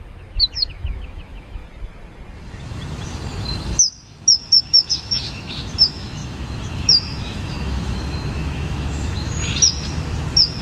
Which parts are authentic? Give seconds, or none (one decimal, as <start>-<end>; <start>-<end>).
1.6-4.6; 9.4-10.6